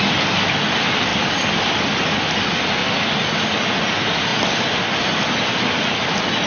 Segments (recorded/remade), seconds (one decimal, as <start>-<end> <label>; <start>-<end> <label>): 0.0-6.5 recorded